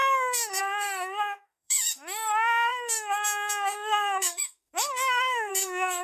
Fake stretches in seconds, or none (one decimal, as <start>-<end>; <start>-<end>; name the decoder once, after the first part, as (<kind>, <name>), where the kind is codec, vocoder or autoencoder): 0.0-6.0 (autoencoder, DAC-VAE)